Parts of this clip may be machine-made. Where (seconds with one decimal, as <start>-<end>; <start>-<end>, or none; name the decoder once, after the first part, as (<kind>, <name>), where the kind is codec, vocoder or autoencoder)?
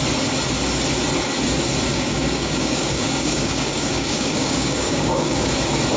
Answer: 1.9-5.5 (codec, DAC)